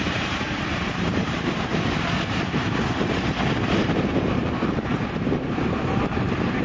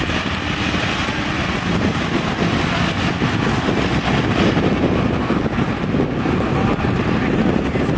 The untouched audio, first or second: second